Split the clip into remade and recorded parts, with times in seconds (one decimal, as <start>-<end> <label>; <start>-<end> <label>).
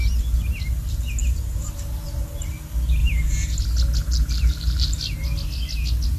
0.0-1.2 recorded; 1.2-1.7 remade; 1.7-3.0 recorded; 3.0-3.5 remade; 3.5-4.0 recorded; 4.0-5.0 remade; 5.0-6.2 recorded